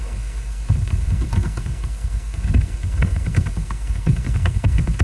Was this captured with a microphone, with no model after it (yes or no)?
no